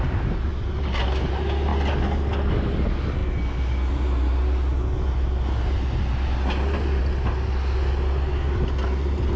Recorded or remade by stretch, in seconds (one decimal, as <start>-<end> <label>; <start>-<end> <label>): 0.0-9.4 recorded